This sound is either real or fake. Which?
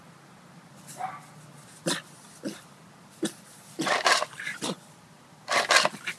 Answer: real